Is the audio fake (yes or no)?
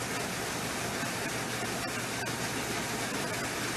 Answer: no